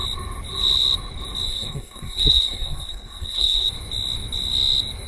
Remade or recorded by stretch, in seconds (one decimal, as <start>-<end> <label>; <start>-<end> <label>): 0.0-1.5 recorded; 1.5-3.7 remade; 3.7-5.1 recorded